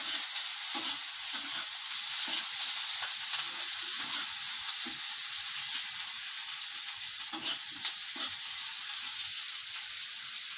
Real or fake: real